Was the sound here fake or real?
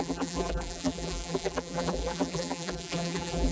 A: fake